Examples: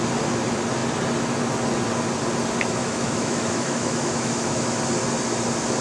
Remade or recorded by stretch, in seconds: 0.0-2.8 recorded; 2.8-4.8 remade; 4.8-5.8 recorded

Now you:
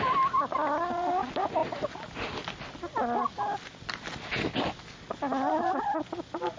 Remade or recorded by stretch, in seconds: 0.0-6.6 recorded

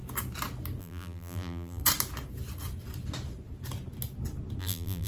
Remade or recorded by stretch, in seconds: 0.0-0.8 recorded; 0.8-1.8 remade; 1.8-4.6 recorded; 4.6-5.1 remade

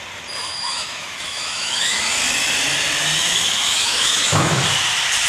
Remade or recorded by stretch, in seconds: 0.0-0.4 recorded; 0.4-2.1 remade; 2.1-3.2 recorded; 3.2-4.6 remade; 4.6-5.3 recorded

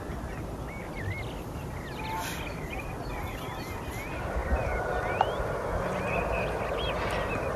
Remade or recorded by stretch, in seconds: 0.0-7.6 recorded

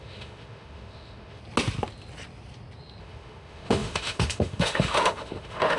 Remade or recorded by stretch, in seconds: 0.0-1.4 remade; 1.4-3.0 recorded; 3.0-5.8 remade

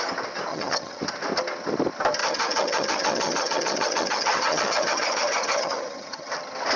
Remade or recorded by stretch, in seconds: 0.0-0.5 recorded; 0.5-1.0 remade; 1.0-2.2 recorded; 2.2-6.3 remade; 6.3-6.8 recorded

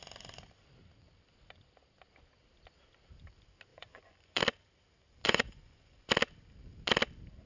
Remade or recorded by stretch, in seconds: 0.0-3.7 recorded; 3.7-4.4 remade; 4.4-5.2 recorded; 5.2-6.1 remade; 6.1-7.5 recorded